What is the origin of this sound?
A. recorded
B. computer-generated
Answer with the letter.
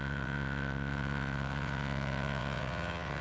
B